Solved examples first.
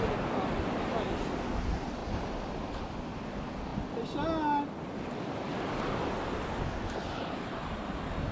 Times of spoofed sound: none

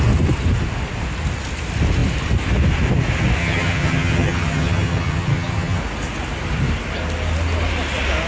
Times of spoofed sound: 3.4-5.8 (vocoder, HiFi-GAN)

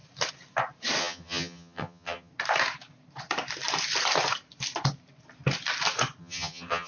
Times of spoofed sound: 1.0-2.3 (vocoder, HiFi-GAN); 6.2-6.9

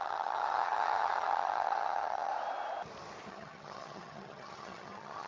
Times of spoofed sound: 0.0-2.3 (vocoder, HiFi-GAN); 3.3-5.3